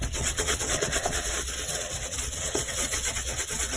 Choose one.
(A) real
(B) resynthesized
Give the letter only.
B